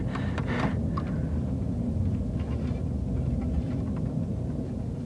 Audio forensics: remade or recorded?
recorded